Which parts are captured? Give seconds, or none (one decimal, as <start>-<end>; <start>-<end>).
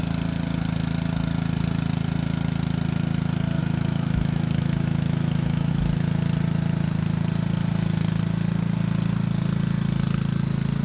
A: 0.0-3.6; 5.7-10.8